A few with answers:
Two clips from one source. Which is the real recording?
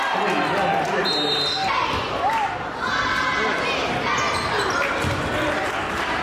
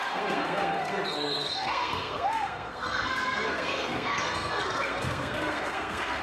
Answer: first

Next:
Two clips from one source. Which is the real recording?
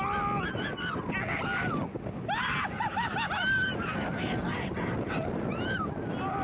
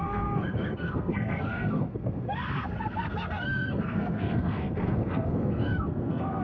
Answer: first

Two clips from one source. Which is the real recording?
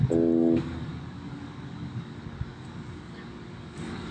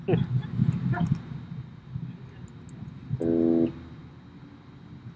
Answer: second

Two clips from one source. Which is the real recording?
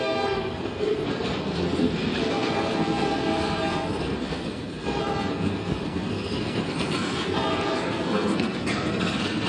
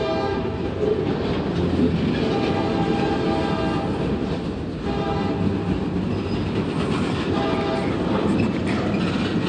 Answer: second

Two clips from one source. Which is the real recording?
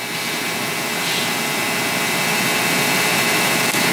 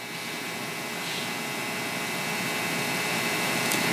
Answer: second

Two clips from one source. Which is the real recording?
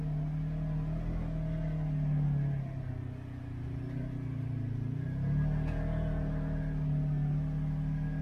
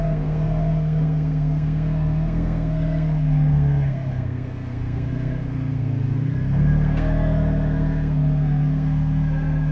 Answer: first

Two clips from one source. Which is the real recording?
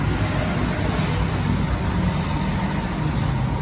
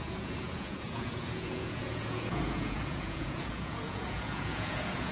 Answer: first